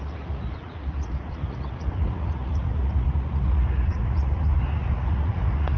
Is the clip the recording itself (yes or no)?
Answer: no